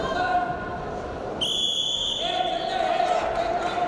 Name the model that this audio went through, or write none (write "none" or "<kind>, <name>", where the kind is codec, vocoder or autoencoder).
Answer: none